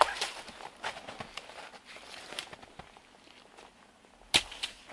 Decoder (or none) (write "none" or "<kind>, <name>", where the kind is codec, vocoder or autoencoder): none